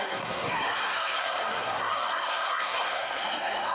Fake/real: fake